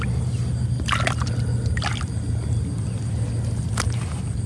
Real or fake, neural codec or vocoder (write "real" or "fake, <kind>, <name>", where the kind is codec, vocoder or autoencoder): real